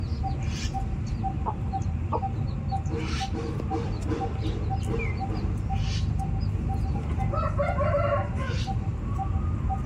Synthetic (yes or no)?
no